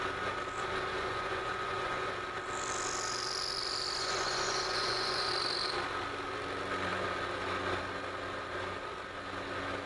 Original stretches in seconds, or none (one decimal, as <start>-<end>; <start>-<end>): 0.0-0.9; 2.1-4.0; 5.3-9.9